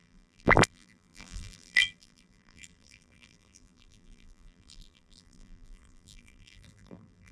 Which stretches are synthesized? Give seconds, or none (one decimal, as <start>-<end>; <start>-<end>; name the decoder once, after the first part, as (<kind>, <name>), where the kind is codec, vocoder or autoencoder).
0.0-7.3 (vocoder, BigVGAN v2)